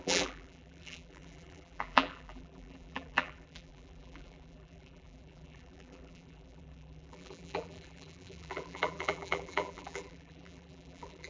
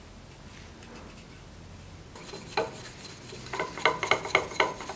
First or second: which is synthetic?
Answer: first